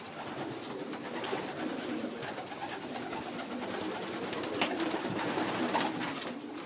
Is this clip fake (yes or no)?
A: no